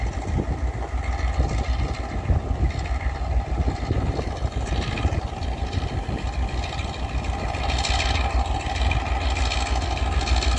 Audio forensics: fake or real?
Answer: real